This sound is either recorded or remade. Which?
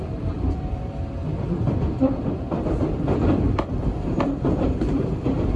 remade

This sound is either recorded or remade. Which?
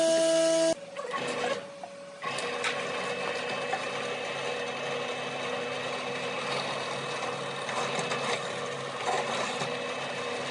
recorded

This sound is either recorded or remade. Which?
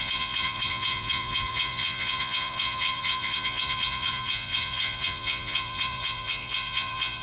remade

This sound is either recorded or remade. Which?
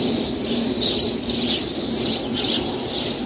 recorded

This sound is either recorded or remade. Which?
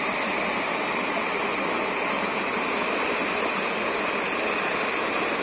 recorded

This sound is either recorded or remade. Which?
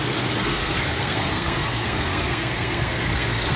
remade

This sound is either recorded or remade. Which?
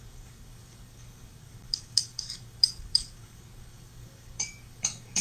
remade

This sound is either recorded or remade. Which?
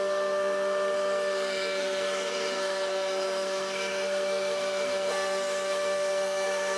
remade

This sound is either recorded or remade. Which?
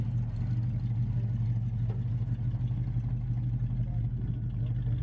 recorded